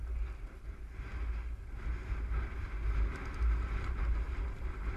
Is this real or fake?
real